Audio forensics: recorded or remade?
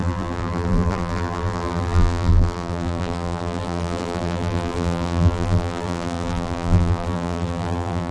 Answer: remade